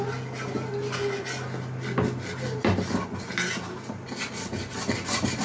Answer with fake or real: real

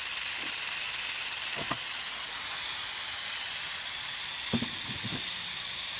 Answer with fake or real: real